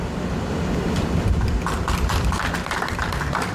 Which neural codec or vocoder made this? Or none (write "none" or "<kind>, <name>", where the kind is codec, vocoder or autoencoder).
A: none